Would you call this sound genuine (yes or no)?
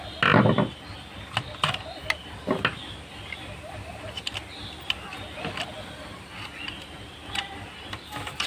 yes